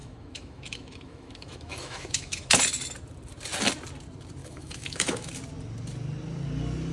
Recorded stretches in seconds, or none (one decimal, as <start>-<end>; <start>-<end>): 2.6-4.4; 5.3-6.9